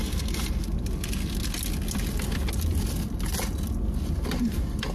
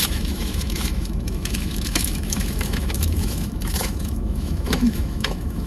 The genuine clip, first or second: first